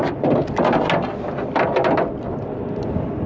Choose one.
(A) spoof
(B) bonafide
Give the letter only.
B